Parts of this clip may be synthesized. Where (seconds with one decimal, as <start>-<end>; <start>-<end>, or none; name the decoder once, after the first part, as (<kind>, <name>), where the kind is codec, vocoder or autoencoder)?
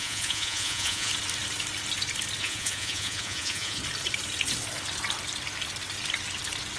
0.0-1.1 (vocoder, Vocos); 2.4-3.8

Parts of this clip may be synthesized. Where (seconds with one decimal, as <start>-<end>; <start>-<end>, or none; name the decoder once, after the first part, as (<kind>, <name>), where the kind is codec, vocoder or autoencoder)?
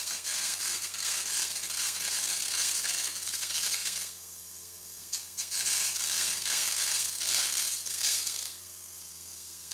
0.0-9.7 (codec, SNAC)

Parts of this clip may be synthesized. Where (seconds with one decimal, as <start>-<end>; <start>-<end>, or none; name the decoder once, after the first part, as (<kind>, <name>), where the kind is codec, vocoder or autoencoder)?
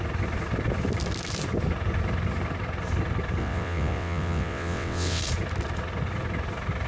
3.4-5.2 (vocoder, WaveNeXt)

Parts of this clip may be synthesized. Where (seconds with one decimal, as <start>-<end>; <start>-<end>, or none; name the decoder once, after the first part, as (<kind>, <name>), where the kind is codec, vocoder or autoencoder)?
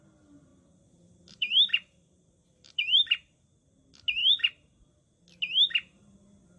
0.5-3.7 (vocoder, BigVGAN v2); 4.2-5.0